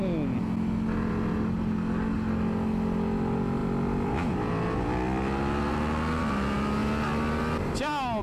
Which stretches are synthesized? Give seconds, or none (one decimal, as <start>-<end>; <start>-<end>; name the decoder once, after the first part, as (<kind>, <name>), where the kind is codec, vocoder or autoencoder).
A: none